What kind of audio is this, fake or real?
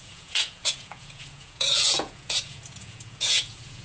fake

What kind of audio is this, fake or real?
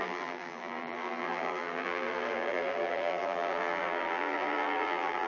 fake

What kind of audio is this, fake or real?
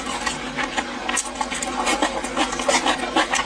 real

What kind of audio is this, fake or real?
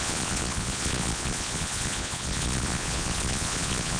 fake